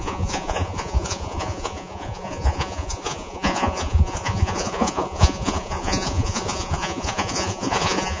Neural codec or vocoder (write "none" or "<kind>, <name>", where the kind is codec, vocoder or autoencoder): vocoder, Vocos